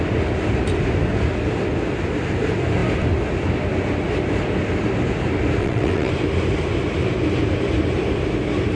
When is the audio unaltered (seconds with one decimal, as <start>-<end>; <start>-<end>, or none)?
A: 0.0-5.6; 6.1-8.8